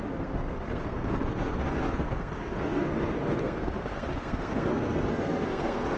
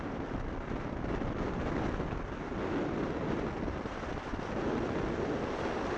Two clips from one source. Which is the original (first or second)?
second